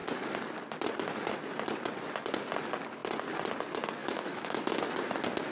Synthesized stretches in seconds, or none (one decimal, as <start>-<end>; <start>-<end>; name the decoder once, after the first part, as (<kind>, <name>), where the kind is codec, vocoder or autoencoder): 4.0-4.8 (autoencoder, DAC-VAE)